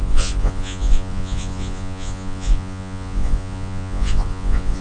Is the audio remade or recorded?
remade